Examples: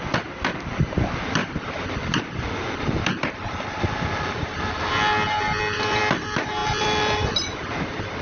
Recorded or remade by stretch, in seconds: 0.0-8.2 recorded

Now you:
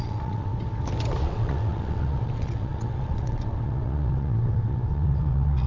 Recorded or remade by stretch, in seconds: 0.0-0.5 remade; 0.5-1.2 recorded; 1.2-5.7 remade

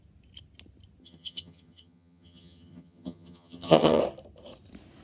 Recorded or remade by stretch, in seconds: 0.0-1.0 recorded; 1.0-4.0 remade; 4.0-5.0 recorded

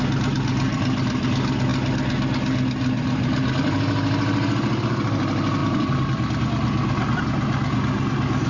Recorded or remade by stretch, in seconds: 0.0-8.5 recorded

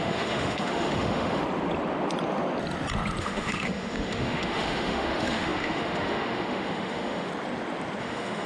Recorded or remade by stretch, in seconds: 0.0-1.4 remade; 1.4-3.2 recorded; 3.2-7.3 remade; 7.3-8.0 recorded; 8.0-8.5 remade